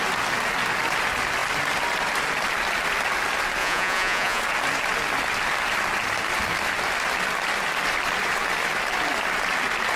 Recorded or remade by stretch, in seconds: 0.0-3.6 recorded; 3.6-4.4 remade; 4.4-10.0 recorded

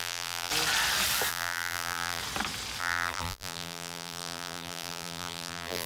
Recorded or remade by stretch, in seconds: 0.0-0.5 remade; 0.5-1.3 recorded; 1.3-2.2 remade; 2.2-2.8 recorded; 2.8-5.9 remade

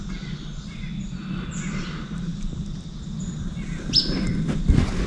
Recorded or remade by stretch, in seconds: 0.0-5.1 recorded

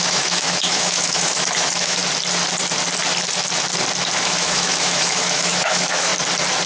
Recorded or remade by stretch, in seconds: 0.0-2.0 remade; 2.0-4.2 recorded; 4.2-6.1 remade; 6.1-6.7 recorded

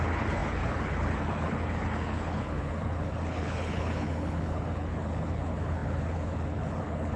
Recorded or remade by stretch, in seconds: 0.0-7.2 remade

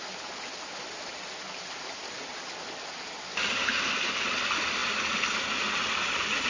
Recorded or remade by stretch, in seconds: 0.0-6.5 recorded